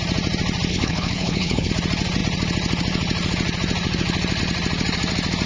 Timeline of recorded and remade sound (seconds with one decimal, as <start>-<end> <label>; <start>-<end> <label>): 0.0-0.7 recorded; 0.7-1.7 remade; 1.7-5.5 recorded